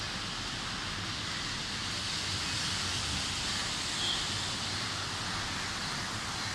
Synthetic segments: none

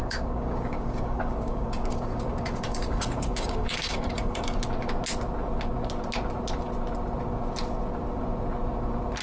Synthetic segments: 0.0-4.6 (codec, DAC)

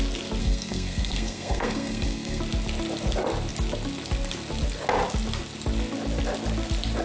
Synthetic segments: 0.4-2.4 (codec, SNAC)

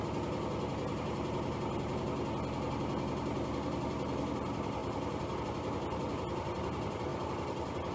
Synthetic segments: 4.8-5.4 (vocoder, BigVGAN v2); 7.1-7.9

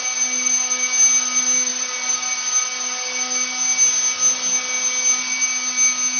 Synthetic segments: none